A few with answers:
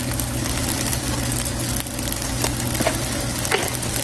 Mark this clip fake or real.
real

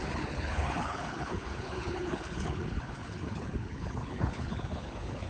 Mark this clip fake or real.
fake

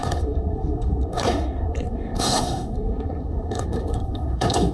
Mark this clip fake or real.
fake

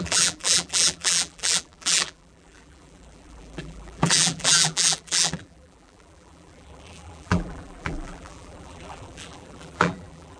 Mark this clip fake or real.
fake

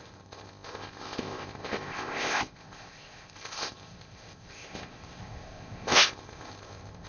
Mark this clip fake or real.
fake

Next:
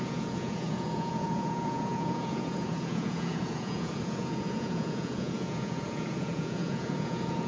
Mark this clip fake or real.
fake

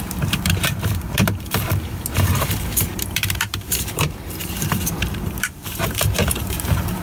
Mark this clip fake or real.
fake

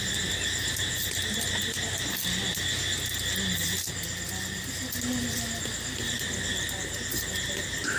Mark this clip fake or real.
real